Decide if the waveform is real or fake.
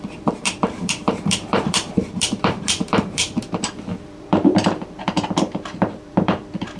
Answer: fake